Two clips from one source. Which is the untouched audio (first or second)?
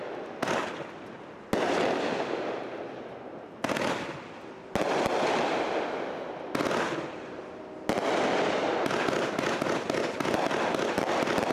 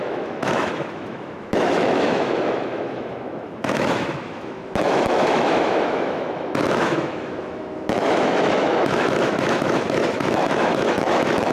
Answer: first